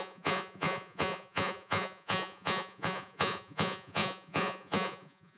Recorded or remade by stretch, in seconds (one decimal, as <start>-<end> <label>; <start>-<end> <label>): 0.0-5.4 remade